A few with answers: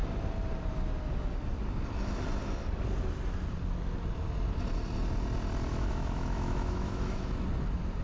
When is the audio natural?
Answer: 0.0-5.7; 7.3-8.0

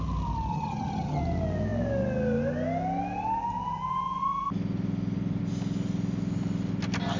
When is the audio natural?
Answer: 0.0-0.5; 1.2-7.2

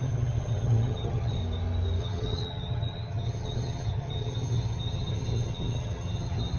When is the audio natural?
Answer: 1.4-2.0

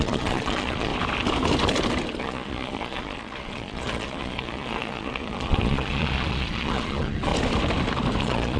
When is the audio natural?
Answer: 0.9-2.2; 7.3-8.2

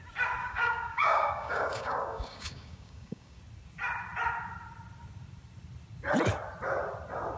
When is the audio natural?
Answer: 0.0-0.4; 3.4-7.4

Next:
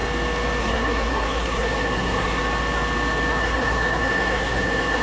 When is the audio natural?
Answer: 0.0-0.6; 2.4-3.4